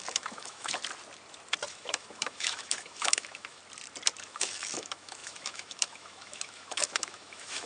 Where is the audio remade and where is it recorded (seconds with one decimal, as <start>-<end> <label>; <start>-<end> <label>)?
0.0-0.8 remade; 0.8-1.7 recorded; 1.7-3.6 remade; 3.6-4.2 recorded; 4.2-7.7 remade